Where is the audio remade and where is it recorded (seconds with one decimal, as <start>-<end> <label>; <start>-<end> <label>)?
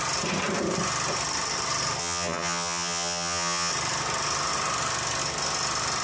0.0-2.0 recorded; 2.0-3.7 remade; 3.7-6.0 recorded